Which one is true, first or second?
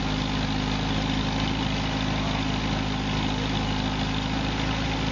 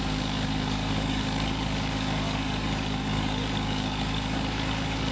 first